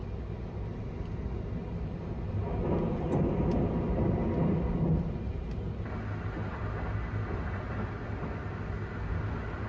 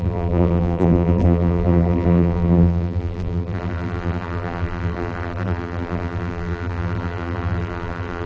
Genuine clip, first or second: first